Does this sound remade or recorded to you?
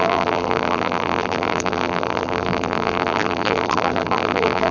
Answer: remade